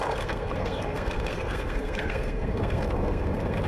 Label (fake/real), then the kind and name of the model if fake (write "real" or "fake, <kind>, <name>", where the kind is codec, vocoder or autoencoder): fake, codec, SNAC